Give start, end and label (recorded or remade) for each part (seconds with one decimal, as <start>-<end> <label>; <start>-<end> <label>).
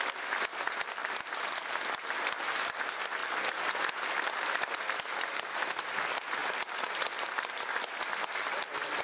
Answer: 0.0-9.0 recorded